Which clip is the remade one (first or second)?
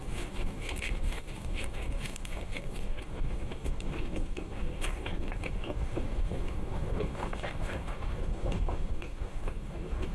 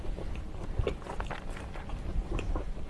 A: first